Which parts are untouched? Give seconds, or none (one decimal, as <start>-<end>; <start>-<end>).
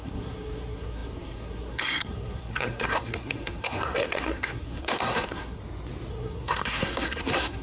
5.6-6.1